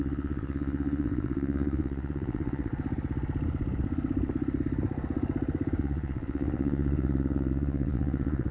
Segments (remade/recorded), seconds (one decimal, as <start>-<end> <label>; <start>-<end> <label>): 0.0-2.7 remade; 2.7-5.8 recorded; 5.8-8.5 remade